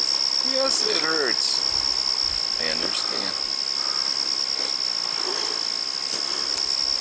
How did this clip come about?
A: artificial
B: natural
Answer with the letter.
B